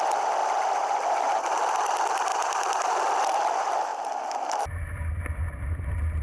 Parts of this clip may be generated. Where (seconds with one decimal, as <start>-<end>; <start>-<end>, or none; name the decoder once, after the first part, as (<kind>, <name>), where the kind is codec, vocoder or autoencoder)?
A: 2.3-2.9 (vocoder, BigVGAN v2)